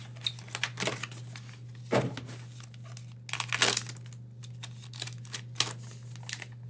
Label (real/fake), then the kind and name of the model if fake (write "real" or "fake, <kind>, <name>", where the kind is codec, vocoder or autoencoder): real